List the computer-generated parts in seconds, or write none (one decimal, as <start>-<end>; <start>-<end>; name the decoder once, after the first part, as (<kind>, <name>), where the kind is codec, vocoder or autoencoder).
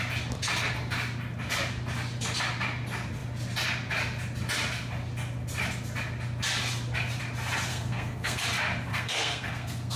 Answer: 7.7-8.4 (codec, SNAC); 8.9-10.0